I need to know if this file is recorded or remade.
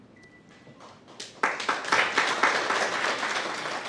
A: recorded